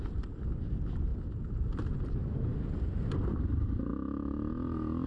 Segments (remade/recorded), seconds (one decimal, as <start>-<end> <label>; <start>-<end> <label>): 0.0-5.1 recorded